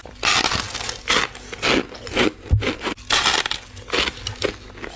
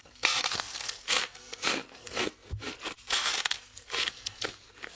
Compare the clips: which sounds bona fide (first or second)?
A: first